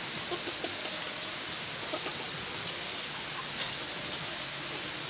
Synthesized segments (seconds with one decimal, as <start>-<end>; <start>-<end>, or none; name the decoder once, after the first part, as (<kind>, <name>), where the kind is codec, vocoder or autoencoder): none